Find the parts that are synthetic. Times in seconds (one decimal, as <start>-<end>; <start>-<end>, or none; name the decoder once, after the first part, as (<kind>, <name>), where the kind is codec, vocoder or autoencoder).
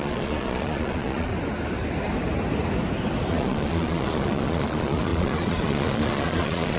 0.0-1.3 (vocoder, Vocos); 3.3-6.8